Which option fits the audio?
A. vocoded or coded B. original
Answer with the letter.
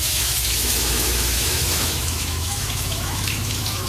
A